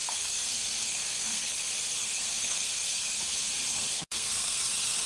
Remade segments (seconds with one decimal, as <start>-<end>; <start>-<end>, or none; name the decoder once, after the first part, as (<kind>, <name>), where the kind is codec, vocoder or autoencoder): 0.0-1.5 (codec, SNAC); 2.0-3.2; 3.7-5.1